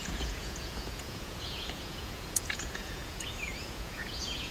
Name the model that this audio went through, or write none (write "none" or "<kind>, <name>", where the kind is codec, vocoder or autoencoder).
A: vocoder, Vocos